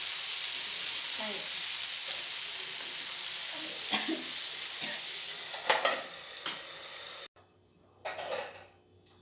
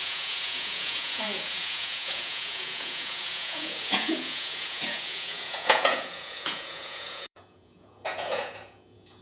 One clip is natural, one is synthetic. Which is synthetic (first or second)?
second